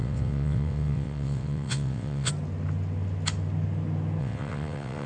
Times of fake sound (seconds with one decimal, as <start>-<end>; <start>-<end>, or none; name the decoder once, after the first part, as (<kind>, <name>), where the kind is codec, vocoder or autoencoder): 0.0-2.3 (vocoder, WaveNeXt); 4.2-5.1